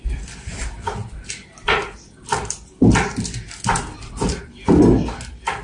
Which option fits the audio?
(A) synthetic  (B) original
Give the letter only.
B